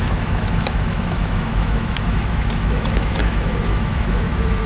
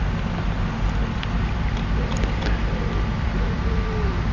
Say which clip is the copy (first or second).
first